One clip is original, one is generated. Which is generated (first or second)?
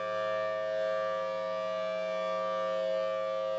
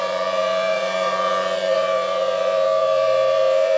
second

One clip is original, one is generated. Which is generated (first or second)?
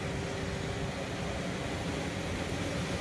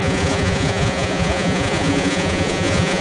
second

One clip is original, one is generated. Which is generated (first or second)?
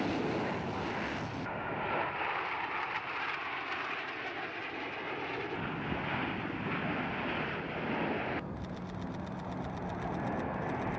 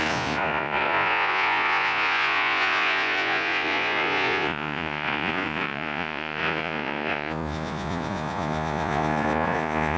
second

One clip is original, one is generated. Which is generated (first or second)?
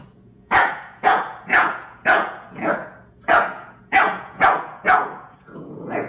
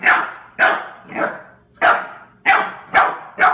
first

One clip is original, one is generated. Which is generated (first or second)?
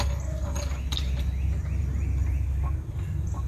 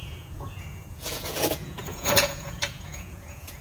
second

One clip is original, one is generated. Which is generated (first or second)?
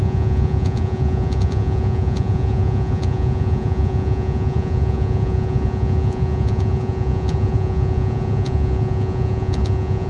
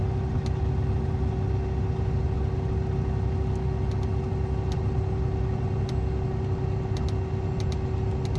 first